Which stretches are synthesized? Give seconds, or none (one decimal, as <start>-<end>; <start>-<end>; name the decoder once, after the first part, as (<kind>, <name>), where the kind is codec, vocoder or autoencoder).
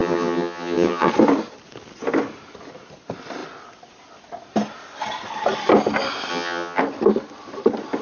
0.0-1.1 (vocoder, HiFi-GAN); 6.3-6.8